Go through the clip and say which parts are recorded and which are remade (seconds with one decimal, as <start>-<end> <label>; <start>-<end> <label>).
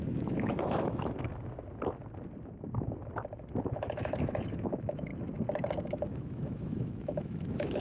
0.0-1.3 remade; 1.3-3.7 recorded; 3.7-5.1 remade; 5.1-5.9 recorded; 5.9-7.8 remade